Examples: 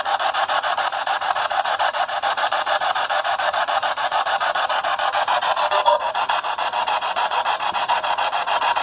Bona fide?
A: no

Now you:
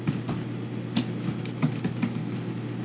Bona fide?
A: yes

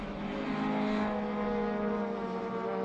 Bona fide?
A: yes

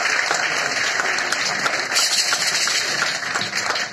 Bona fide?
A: yes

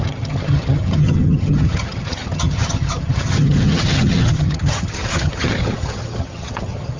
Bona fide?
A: no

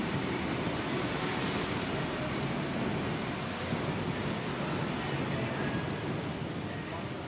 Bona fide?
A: yes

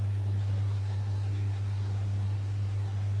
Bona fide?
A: no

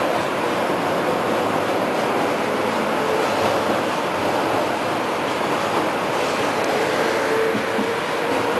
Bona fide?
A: yes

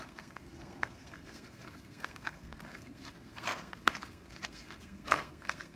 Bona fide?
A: no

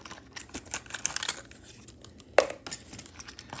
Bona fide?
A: yes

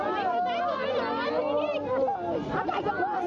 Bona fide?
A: yes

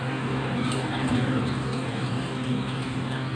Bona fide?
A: no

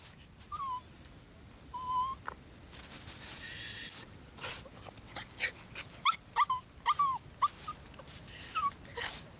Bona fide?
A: yes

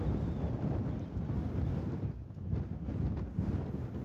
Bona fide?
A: yes